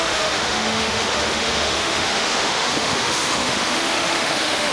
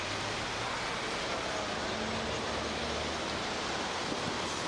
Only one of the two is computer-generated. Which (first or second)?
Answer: first